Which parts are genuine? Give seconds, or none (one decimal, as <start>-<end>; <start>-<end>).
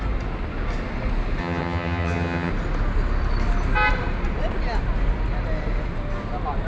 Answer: 0.0-1.4; 2.5-6.7